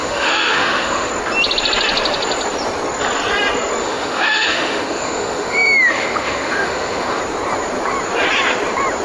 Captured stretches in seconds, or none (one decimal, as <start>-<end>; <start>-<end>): 1.1-3.8; 7.2-9.0